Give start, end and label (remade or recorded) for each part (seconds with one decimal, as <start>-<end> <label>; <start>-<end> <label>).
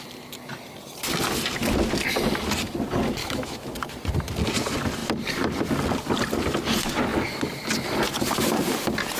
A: 0.0-3.2 recorded; 3.2-3.7 remade; 3.7-9.2 recorded